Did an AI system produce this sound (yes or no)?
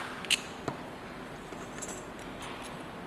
no